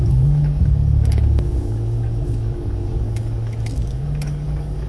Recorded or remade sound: remade